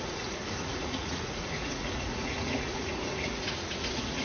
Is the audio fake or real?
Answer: fake